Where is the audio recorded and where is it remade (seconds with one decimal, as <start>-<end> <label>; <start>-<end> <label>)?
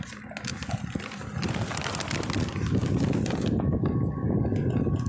0.0-5.1 recorded